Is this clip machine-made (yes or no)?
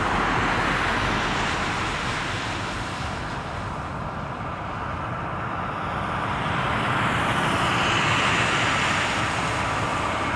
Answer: yes